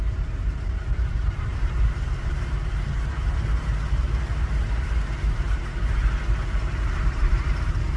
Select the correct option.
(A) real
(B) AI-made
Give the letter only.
B